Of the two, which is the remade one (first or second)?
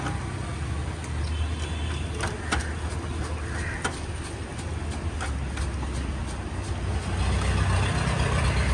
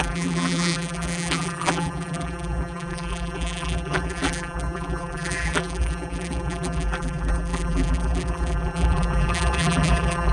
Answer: second